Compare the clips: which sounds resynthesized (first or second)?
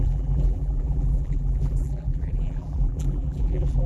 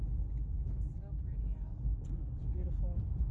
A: first